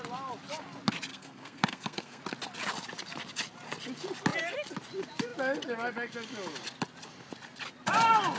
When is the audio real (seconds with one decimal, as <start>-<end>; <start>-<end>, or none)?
0.0-1.1; 2.2-8.4